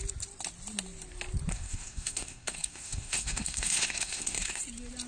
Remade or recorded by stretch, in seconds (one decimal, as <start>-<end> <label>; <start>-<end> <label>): 0.0-1.5 recorded; 1.5-4.6 remade; 4.6-5.1 recorded